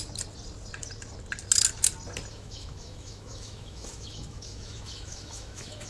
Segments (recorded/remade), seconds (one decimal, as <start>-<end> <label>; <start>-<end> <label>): 0.0-2.3 recorded; 2.3-5.9 remade